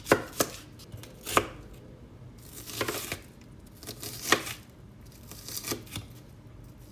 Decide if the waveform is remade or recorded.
recorded